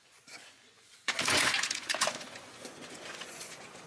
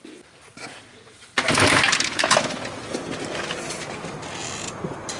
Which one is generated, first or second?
first